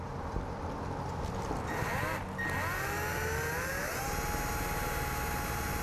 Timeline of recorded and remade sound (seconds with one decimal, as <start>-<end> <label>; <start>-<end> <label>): 0.0-1.9 remade; 1.9-5.8 recorded